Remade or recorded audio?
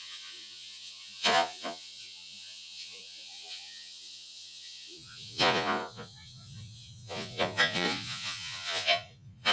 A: remade